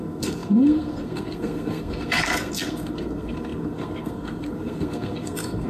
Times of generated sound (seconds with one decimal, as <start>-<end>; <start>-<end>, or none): 0.0-5.7